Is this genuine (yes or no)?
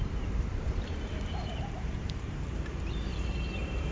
no